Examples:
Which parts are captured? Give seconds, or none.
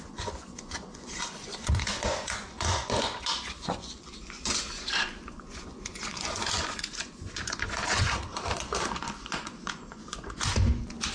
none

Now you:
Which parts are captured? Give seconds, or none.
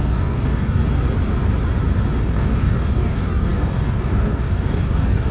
0.8-2.2